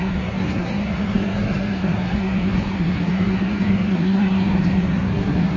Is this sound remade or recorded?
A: remade